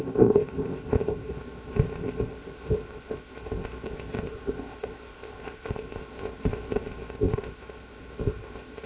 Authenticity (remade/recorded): remade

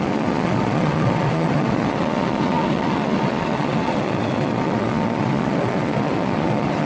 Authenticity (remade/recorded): remade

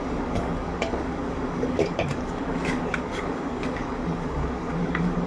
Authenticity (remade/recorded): remade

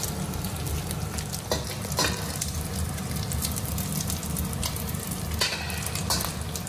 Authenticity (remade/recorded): recorded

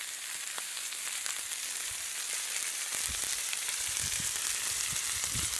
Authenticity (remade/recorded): remade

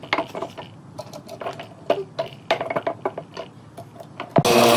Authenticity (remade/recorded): recorded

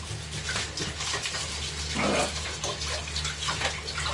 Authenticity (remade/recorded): recorded